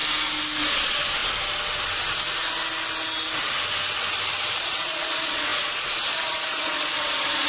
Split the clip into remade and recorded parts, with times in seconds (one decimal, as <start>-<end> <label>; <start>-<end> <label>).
0.0-0.7 recorded; 0.7-1.2 remade; 1.2-4.6 recorded; 4.6-7.5 remade